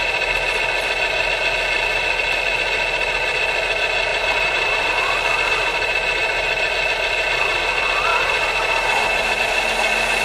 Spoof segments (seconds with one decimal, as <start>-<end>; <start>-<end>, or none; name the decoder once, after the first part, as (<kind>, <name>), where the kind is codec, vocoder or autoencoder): 4.1-4.9 (vocoder, BigVGAN v2); 5.7-6.7; 8.1-9.4